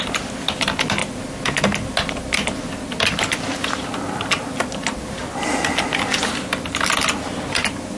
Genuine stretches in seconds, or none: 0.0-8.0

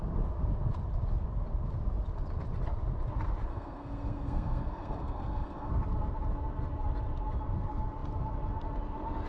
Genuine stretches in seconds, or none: 0.0-3.5; 5.7-9.3